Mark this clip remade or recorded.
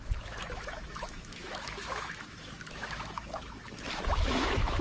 remade